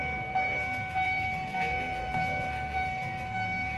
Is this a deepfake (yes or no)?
yes